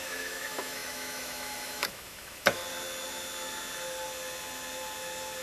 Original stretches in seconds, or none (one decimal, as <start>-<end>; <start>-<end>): 2.6-5.4